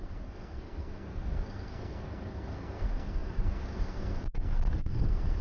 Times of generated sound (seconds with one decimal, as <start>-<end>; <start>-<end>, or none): 0.0-5.4